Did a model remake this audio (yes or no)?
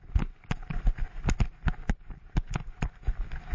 no